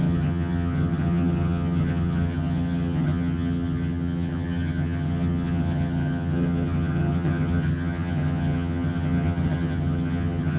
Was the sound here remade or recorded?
remade